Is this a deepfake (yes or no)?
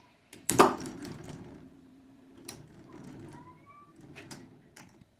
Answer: yes